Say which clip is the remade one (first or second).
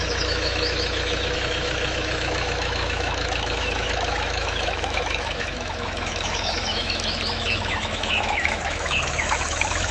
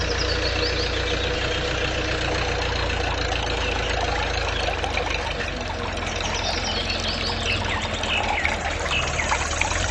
first